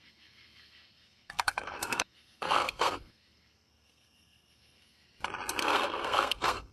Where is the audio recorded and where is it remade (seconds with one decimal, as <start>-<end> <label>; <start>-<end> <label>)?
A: 0.0-5.0 remade; 5.0-5.6 recorded; 5.6-6.7 remade